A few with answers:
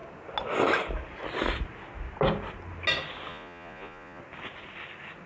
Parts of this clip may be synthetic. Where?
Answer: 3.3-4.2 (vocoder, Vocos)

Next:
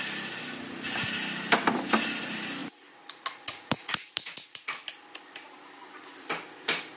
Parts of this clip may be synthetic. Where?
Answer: 2.6-4.8 (vocoder, Vocos)

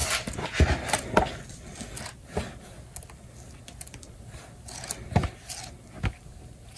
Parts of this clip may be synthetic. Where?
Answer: none

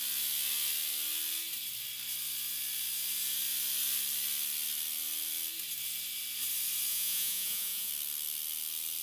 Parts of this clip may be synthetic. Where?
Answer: 6.9-7.9 (vocoder, Vocos)

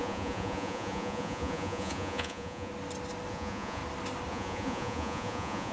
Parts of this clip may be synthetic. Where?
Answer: 0.0-2.7 (vocoder, Vocos); 3.3-3.8; 4.3-5.7

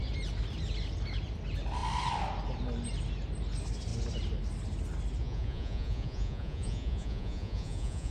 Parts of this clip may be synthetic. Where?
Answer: 5.2-8.1 (vocoder, Vocos)